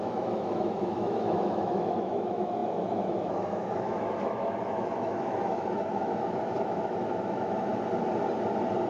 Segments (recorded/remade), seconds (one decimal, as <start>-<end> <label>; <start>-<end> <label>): 0.0-7.7 remade; 7.7-8.9 recorded